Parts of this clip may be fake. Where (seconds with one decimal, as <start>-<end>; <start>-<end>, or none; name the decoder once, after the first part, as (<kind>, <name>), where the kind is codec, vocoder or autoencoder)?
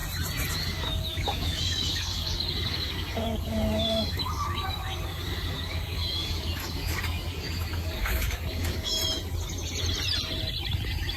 0.5-9.0 (codec, DAC)